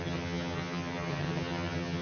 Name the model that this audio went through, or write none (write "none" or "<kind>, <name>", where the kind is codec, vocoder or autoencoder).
vocoder, HiFi-GAN